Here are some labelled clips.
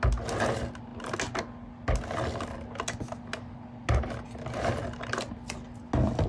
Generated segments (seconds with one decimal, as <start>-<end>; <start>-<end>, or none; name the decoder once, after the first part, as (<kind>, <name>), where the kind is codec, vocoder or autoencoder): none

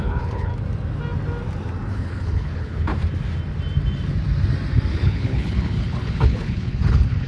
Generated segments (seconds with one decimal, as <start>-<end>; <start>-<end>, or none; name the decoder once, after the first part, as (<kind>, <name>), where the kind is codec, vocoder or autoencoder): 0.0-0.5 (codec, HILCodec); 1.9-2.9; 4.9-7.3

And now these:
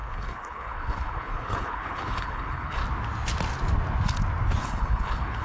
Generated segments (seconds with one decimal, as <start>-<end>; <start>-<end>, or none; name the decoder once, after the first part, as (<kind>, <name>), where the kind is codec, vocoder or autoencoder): 0.0-2.8 (codec, HILCodec); 4.6-5.4